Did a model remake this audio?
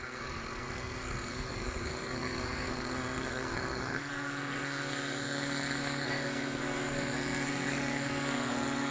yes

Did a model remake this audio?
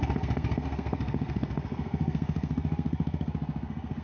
yes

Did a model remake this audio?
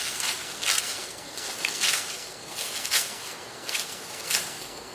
yes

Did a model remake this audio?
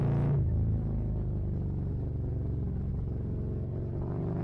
no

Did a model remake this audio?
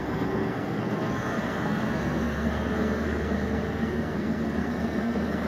yes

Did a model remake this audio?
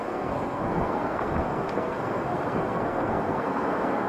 yes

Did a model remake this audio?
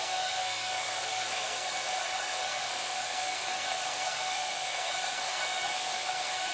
yes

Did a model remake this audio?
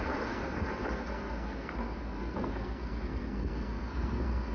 yes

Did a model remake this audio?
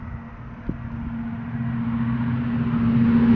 no